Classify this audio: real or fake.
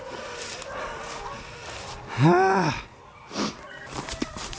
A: real